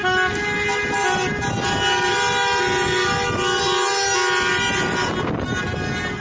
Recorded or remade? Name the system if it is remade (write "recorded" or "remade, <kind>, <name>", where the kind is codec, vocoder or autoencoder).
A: recorded